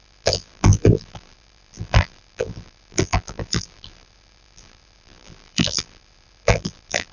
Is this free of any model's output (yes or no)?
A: no